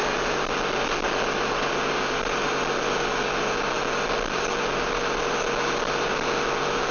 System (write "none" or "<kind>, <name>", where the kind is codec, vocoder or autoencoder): none